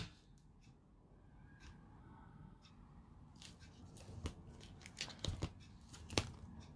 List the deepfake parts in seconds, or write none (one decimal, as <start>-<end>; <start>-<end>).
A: 2.0-2.7